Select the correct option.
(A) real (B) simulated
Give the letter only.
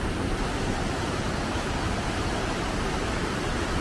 B